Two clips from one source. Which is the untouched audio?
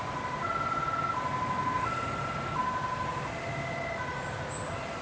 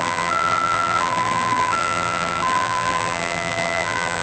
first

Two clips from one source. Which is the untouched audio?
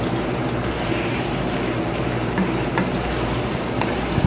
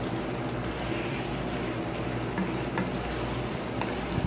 second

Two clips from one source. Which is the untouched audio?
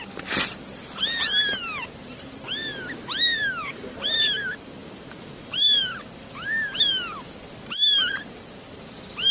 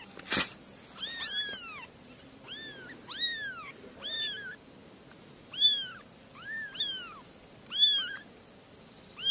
second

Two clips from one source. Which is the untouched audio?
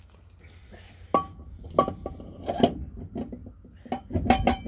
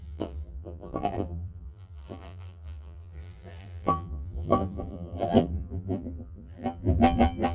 first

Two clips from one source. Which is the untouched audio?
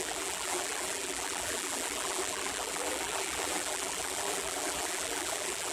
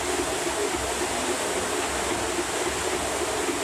second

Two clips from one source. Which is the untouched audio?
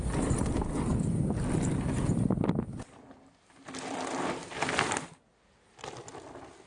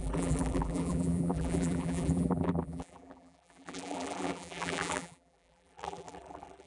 first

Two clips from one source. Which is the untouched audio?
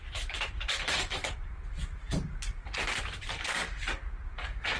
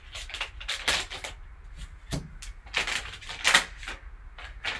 second